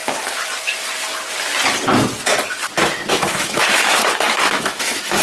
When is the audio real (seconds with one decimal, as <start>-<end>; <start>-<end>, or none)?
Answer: 0.0-3.1